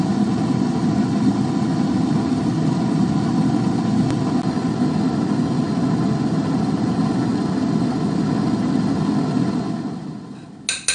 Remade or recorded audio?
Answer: recorded